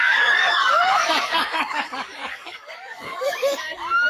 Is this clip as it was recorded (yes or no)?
no